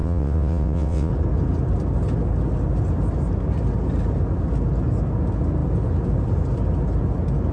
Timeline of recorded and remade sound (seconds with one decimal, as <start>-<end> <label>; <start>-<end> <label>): 0.0-1.1 remade; 1.1-7.5 recorded